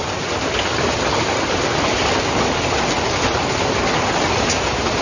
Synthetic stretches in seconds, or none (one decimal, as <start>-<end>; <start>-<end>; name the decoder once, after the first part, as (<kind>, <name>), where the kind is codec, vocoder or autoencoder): none